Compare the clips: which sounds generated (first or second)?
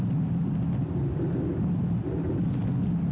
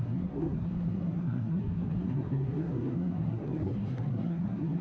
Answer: second